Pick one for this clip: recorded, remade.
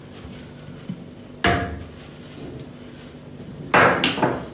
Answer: recorded